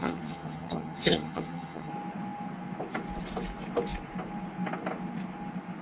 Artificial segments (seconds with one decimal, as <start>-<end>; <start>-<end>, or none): 0.0-1.9